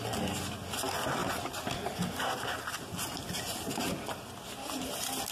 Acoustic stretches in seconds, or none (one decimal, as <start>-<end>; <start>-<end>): 0.0-5.3